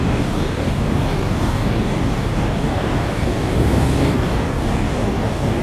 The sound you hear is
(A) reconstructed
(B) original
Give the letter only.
A